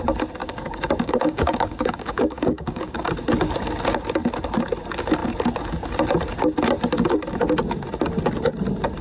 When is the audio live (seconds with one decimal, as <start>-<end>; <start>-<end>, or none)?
0.0-0.4; 3.1-9.0